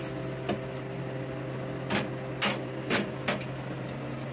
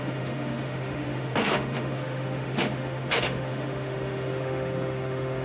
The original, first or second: first